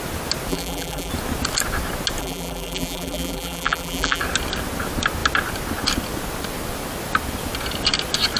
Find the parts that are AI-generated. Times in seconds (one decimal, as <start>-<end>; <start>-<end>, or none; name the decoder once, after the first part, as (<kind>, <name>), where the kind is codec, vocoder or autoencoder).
0.5-1.1 (vocoder, BigVGAN v2); 2.2-4.2